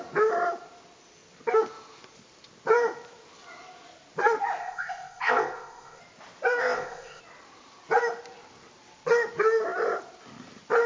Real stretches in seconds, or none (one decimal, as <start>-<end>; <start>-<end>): 0.0-4.6; 6.0-6.6; 7.2-10.9